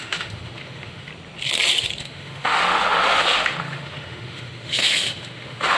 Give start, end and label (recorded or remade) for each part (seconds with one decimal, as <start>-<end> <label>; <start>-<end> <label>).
0.0-1.1 remade; 1.1-2.0 recorded; 2.0-5.8 remade